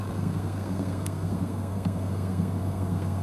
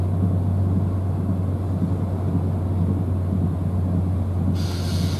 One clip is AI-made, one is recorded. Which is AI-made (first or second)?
first